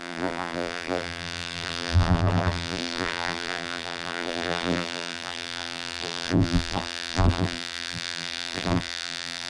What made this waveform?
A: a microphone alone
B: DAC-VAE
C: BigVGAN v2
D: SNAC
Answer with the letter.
C